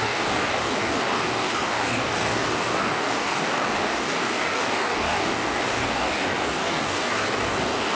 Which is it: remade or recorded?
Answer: remade